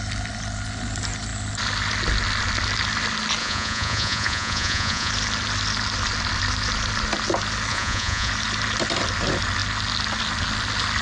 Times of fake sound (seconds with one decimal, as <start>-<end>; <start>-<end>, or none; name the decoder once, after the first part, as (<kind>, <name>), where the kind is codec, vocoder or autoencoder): 3.4-5.1 (vocoder, Vocos); 7.7-8.3